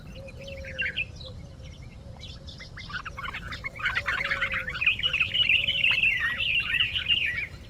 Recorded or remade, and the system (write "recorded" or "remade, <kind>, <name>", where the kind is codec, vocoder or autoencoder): remade, vocoder, BigVGAN v2